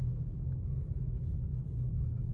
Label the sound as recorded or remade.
recorded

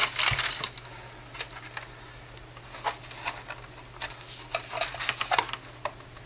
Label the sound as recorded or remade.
recorded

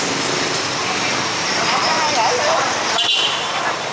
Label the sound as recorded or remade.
recorded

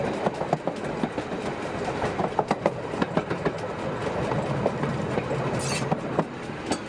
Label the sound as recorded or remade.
recorded